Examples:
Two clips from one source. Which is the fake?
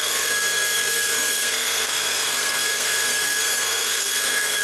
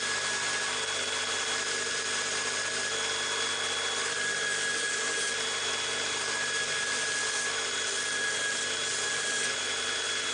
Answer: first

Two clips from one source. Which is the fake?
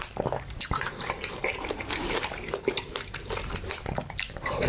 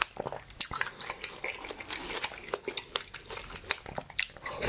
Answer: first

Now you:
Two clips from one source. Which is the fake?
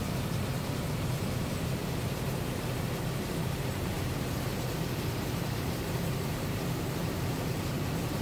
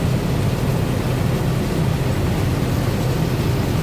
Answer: first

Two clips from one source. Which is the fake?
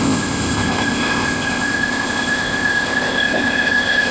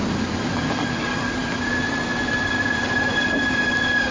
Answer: first